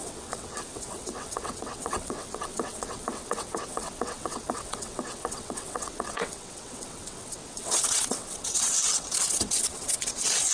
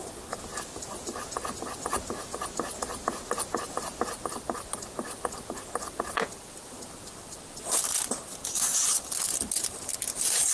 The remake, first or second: first